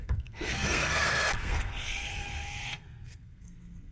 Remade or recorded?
remade